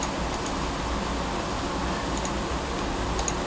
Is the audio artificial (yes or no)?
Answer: no